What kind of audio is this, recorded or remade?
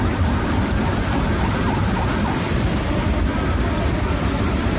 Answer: recorded